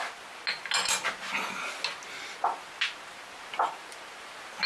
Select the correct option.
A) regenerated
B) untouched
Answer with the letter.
B